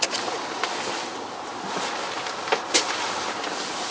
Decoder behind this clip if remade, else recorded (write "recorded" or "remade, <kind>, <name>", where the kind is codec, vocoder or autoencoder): recorded